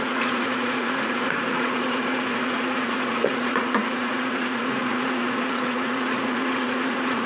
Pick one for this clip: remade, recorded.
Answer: remade